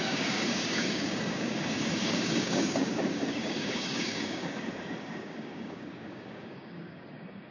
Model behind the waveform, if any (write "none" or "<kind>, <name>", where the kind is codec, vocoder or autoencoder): codec, DAC